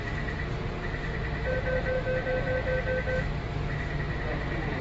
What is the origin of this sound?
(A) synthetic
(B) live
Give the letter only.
B